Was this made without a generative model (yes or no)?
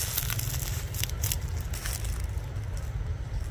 yes